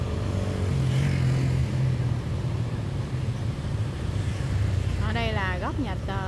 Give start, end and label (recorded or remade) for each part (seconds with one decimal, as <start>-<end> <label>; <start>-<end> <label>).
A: 0.0-1.6 recorded; 1.6-5.1 remade; 5.1-6.3 recorded